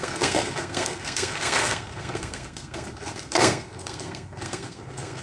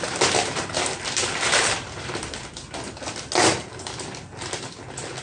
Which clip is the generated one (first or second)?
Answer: first